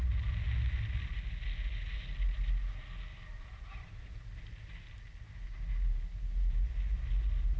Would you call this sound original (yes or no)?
yes